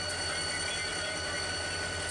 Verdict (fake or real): real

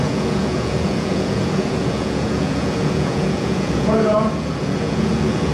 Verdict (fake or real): fake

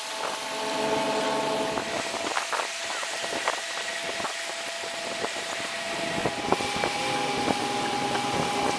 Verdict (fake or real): real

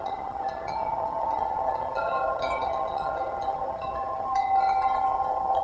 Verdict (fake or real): fake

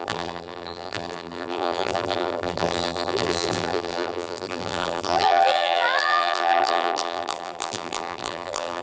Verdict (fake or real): fake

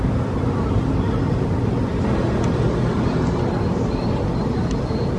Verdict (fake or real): real